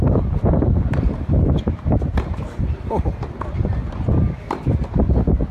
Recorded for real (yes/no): yes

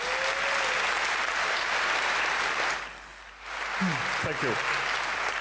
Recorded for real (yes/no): yes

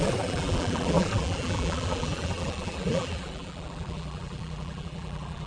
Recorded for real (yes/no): no